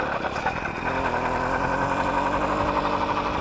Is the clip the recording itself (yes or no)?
yes